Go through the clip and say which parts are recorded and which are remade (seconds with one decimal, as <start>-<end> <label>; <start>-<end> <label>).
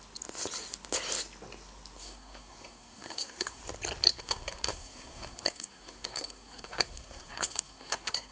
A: 0.0-2.0 recorded; 2.0-3.6 remade; 3.6-4.1 recorded; 4.1-8.3 remade